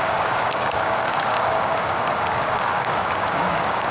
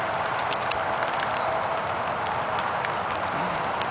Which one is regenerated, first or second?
first